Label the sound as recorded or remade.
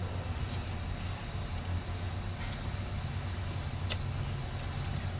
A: recorded